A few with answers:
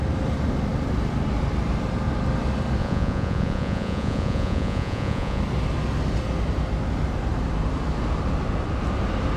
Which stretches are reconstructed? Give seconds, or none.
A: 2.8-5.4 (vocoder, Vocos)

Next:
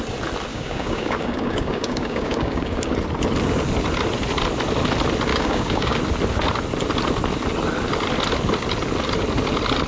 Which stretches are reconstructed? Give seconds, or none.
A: 0.5-2.9 (codec, DAC); 5.3-6.0

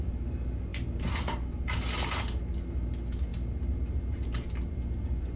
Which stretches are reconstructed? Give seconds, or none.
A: none

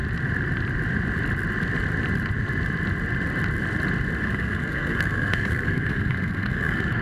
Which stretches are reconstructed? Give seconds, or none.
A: 4.2-7.0 (codec, SNAC)

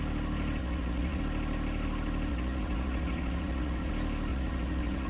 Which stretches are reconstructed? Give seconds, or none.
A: 0.6-1.2 (vocoder, Vocos); 2.3-3.9; 4.3-5.1

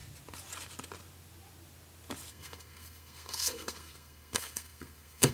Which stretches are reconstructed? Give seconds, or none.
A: 2.3-5.3 (codec, SNAC)

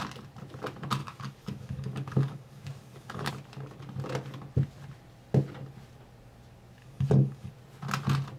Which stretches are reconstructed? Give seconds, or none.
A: 1.0-3.3 (codec, DAC); 6.8-7.5